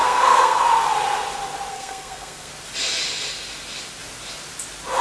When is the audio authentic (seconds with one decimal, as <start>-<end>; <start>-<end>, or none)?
0.6-1.7; 2.5-5.0